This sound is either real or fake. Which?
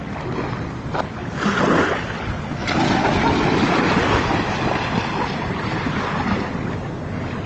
real